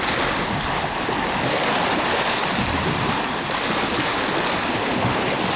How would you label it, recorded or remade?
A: recorded